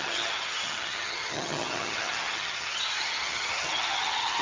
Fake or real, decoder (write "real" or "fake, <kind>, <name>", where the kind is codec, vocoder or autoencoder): fake, vocoder, HiFi-GAN